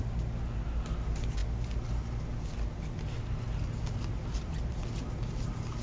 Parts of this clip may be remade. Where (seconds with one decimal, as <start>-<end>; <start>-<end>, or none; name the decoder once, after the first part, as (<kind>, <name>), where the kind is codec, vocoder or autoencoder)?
none